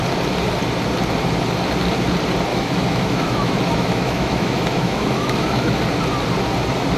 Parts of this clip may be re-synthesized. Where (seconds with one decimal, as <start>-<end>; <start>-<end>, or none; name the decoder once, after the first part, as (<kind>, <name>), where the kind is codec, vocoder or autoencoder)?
2.5-5.8 (autoencoder, DAC-VAE)